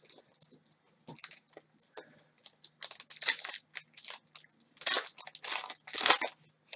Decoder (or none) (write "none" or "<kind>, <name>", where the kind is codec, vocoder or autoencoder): none